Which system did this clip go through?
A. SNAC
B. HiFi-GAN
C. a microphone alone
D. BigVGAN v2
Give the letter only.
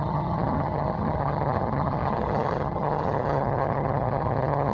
B